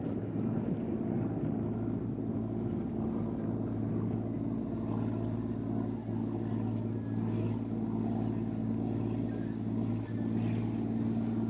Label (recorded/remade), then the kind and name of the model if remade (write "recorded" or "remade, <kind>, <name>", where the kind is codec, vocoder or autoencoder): recorded